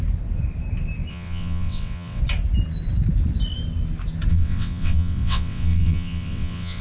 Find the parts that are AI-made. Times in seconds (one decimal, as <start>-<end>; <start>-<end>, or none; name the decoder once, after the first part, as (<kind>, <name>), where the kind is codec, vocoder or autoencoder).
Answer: 1.1-2.2 (vocoder, WaveNeXt); 4.3-6.8